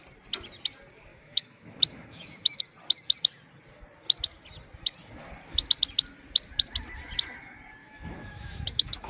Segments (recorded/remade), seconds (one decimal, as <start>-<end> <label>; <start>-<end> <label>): 0.0-1.1 recorded; 1.1-2.6 remade; 2.6-7.8 recorded; 7.8-9.1 remade

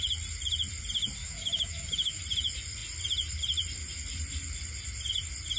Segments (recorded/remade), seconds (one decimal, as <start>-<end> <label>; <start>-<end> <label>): 0.0-1.2 recorded; 1.2-2.2 remade; 2.2-5.6 recorded

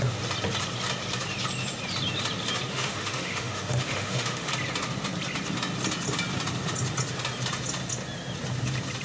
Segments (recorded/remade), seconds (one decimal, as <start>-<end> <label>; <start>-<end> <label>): 0.0-2.7 recorded; 2.7-4.5 remade; 4.5-9.0 recorded

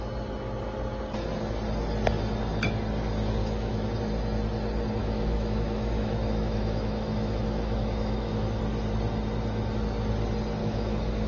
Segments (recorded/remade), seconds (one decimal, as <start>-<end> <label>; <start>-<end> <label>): 0.0-3.4 recorded; 3.4-4.0 remade; 4.0-5.0 recorded; 5.0-8.6 remade; 8.6-10.6 recorded; 10.6-11.3 remade

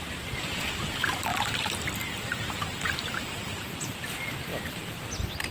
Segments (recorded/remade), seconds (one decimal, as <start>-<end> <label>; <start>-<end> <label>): 0.0-5.5 recorded